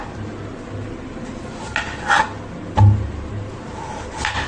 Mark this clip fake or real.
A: real